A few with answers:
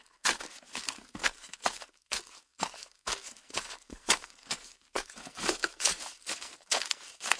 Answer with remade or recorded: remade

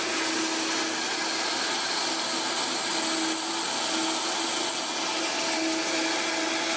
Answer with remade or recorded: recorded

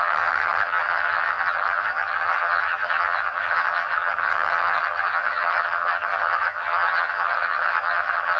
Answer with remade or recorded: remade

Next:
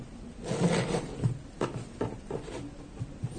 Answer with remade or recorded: recorded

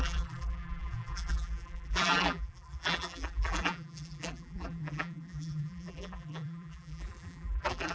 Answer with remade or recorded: remade